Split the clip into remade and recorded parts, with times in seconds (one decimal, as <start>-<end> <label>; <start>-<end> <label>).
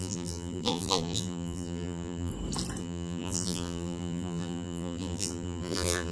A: 0.0-2.3 remade; 2.3-2.8 recorded; 2.8-6.1 remade